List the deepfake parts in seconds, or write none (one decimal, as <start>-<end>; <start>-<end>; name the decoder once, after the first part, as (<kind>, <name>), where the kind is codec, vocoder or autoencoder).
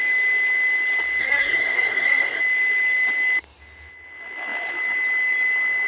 1.2-2.4 (codec, SNAC)